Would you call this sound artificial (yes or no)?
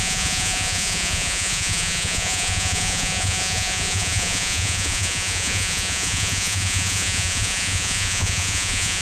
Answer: yes